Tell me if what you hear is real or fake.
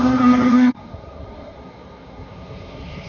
fake